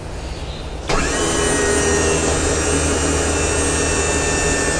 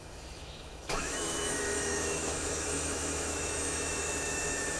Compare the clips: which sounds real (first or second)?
first